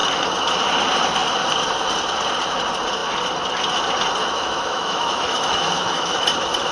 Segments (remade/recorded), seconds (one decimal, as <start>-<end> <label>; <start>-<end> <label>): 0.0-4.2 recorded; 4.2-6.2 remade; 6.2-6.7 recorded